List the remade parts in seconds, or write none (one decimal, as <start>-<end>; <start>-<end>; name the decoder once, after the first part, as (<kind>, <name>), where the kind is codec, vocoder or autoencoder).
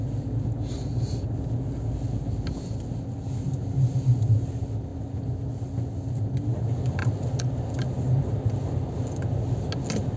none